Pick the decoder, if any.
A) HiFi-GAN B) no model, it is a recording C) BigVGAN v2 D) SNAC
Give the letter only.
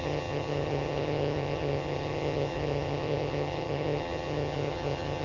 A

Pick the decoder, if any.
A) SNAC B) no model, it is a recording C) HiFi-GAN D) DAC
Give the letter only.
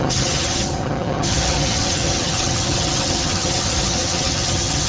C